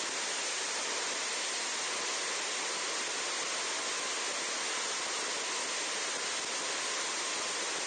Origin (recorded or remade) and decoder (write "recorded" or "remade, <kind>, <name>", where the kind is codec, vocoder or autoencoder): recorded